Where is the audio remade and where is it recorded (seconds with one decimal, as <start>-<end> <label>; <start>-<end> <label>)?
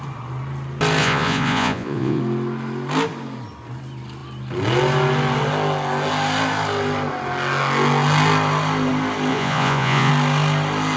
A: 0.0-1.0 recorded; 1.0-2.2 remade; 2.2-9.3 recorded; 9.3-10.1 remade; 10.1-11.0 recorded